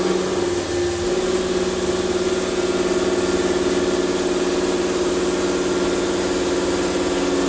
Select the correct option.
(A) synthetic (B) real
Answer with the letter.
B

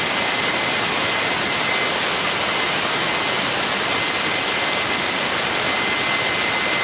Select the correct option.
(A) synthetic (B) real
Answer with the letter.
B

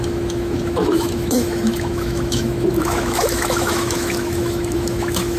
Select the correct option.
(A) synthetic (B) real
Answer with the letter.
A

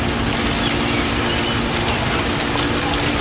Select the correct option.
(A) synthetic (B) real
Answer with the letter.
B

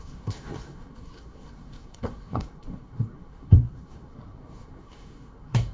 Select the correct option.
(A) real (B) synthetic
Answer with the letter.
B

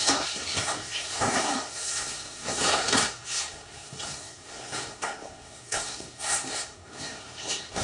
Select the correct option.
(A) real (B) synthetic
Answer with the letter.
B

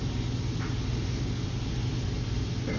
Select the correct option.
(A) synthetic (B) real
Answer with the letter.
B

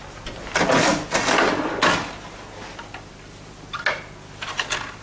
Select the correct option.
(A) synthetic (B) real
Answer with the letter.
B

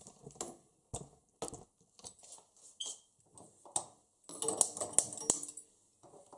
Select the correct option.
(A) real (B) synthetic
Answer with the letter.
A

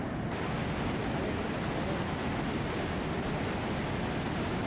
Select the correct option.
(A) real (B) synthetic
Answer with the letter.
A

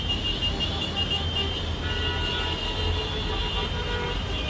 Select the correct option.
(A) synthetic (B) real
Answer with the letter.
B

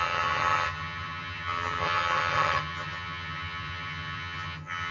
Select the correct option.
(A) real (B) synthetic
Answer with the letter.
B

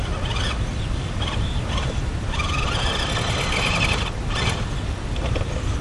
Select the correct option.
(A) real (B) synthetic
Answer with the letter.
A